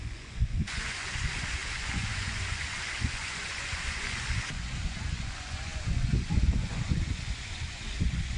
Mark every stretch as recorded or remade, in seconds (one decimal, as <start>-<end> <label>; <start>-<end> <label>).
0.0-8.4 remade